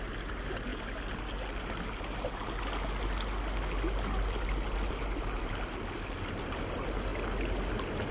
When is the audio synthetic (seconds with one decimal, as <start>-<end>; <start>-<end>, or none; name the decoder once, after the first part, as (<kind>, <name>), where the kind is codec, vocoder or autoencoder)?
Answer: none